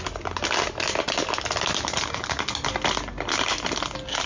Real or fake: real